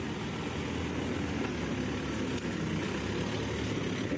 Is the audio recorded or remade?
recorded